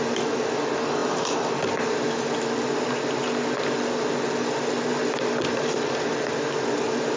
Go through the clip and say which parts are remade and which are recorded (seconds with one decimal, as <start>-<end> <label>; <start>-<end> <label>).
0.0-7.2 recorded